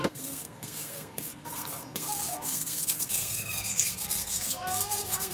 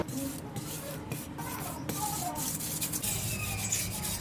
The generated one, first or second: first